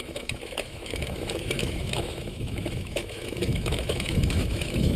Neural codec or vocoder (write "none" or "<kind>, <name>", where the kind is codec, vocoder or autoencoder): autoencoder, DAC-VAE